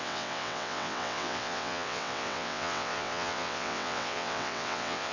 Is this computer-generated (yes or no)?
yes